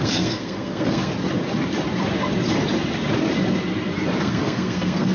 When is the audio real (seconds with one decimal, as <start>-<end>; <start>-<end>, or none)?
1.1-4.2